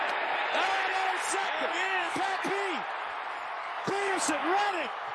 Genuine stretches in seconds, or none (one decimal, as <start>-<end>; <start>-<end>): 0.0-1.4; 2.5-3.6